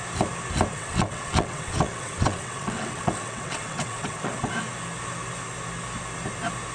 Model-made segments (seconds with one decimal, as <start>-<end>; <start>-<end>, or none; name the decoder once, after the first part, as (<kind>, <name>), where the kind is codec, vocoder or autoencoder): 0.7-4.5 (vocoder, WaveNeXt)